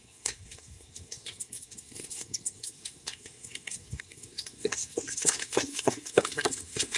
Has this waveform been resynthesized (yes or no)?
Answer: yes